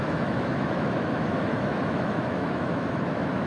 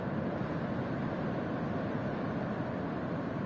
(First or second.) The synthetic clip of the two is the first